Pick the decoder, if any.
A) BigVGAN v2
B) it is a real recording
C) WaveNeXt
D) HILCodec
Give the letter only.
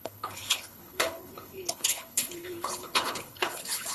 D